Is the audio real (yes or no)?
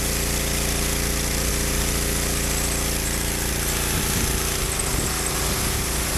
yes